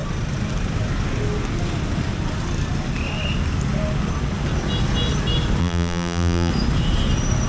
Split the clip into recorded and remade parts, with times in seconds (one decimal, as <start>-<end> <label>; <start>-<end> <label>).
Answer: 0.0-5.6 recorded; 5.6-6.5 remade; 6.5-7.5 recorded